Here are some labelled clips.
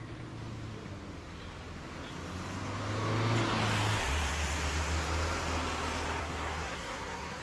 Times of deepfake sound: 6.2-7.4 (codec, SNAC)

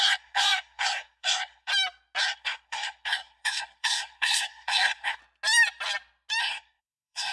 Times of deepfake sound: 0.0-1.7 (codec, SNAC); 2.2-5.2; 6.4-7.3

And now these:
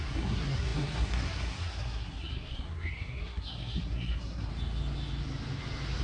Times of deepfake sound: 0.0-4.5 (codec, SNAC)